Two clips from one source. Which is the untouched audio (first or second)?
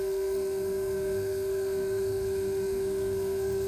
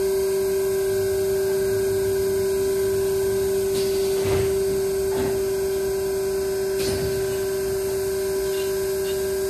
second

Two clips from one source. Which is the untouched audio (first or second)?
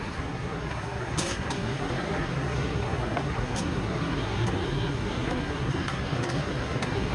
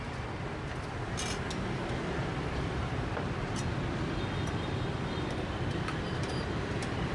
second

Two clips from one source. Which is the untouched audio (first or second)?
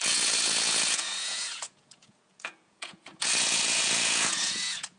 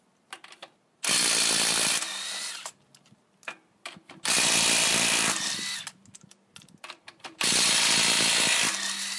second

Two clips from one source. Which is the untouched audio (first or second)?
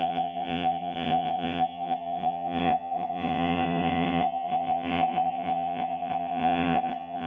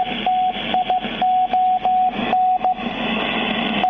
second